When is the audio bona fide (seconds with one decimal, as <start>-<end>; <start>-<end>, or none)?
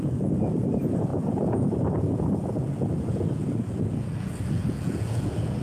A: none